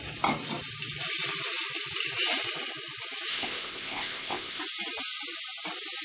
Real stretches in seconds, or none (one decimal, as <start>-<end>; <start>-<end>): 0.0-3.3; 4.6-6.0